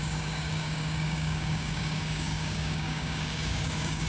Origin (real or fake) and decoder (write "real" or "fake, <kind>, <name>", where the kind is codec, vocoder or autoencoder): fake, codec, DAC